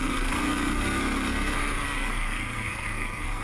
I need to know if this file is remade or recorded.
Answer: remade